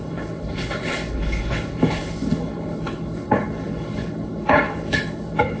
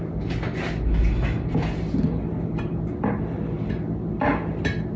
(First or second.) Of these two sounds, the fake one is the first